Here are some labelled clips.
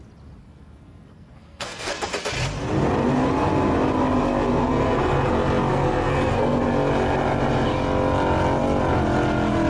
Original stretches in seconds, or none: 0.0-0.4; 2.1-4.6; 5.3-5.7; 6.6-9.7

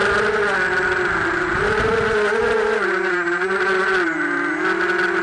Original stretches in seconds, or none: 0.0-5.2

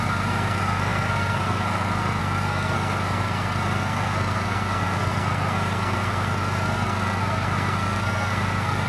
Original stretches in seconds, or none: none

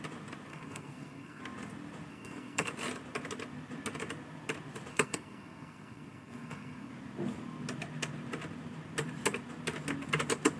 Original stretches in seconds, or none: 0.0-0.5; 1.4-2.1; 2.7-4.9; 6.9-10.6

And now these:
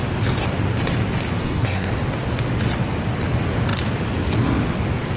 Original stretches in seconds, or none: 0.0-1.4; 1.9-5.2